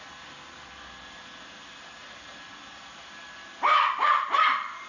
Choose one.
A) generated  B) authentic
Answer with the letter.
B